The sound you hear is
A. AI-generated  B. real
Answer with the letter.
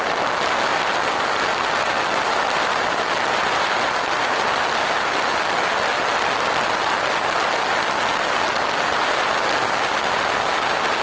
B